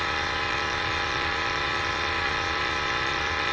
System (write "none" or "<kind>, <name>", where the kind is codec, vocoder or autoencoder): vocoder, Vocos